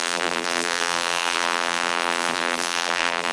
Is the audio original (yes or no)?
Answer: no